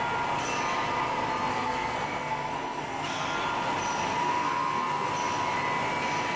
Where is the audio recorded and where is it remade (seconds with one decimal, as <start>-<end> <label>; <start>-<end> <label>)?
0.0-1.5 recorded; 1.5-3.4 remade; 3.4-4.2 recorded; 4.2-5.1 remade; 5.1-6.4 recorded